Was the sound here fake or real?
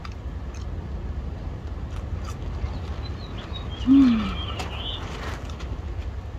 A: real